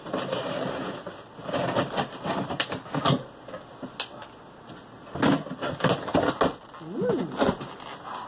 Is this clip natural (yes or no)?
yes